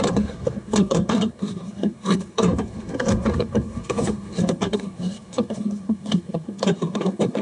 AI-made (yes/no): yes